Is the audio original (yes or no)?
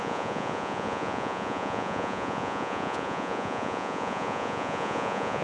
no